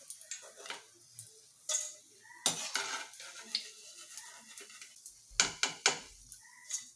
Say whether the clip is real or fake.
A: real